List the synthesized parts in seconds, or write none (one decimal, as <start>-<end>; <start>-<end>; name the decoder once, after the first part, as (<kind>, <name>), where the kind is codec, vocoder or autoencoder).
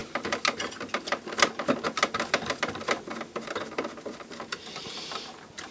none